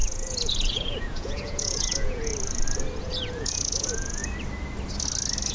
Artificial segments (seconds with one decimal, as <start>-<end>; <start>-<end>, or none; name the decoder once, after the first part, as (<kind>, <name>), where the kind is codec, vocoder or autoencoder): 0.0-2.3 (vocoder, Vocos); 3.0-4.2